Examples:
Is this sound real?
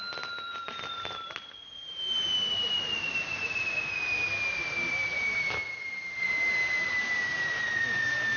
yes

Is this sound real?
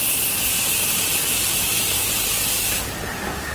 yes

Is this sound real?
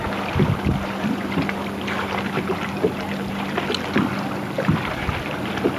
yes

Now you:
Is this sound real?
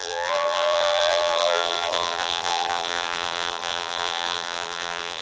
no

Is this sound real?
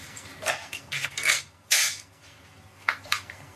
no